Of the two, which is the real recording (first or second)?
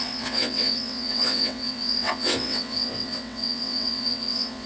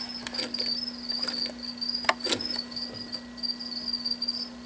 second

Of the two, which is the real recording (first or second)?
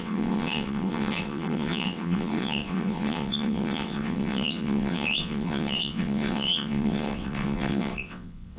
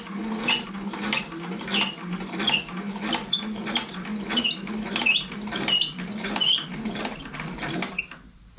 second